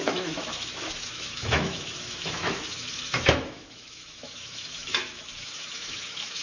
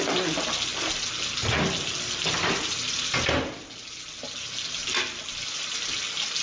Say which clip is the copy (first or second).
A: first